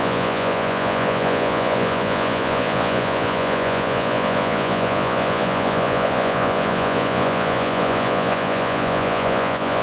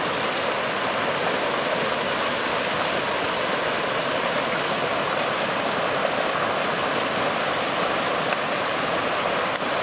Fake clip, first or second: first